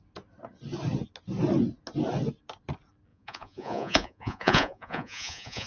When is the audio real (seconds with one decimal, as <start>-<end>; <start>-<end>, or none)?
0.0-3.1

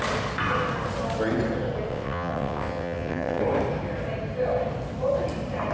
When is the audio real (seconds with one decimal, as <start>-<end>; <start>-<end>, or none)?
0.0-1.9; 3.4-5.7

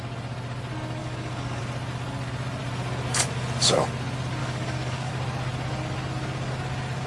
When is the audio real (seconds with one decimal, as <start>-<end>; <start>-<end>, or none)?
0.0-1.0; 1.6-4.4; 5.1-7.1

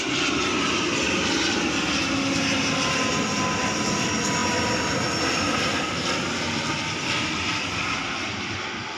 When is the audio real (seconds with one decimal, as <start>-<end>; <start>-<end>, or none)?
0.0-9.0

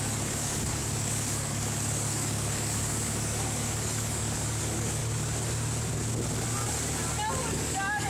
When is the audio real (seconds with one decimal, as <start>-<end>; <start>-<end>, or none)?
5.0-7.3

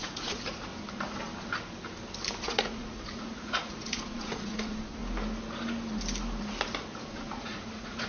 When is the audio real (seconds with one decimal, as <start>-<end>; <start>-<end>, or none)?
0.7-2.4; 5.0-7.1

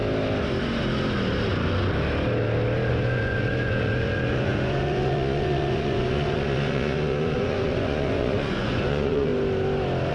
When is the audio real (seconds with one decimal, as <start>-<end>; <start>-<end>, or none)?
0.0-2.9; 9.3-10.1

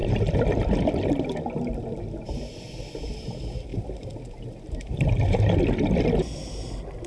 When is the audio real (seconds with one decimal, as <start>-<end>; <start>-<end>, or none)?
0.0-3.7; 5.4-7.1